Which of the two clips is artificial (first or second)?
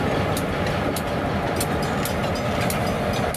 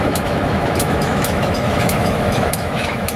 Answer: second